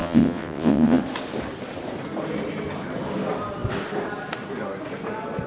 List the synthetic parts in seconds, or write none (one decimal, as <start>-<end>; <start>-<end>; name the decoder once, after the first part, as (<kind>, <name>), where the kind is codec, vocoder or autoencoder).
0.0-1.0 (vocoder, WaveNeXt)